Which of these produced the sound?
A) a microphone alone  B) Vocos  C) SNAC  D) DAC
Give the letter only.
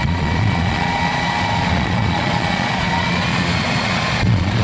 B